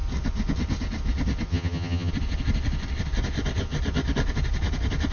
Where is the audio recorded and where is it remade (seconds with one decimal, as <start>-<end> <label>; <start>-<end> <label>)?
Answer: 0.0-1.5 recorded; 1.5-2.1 remade; 2.1-5.1 recorded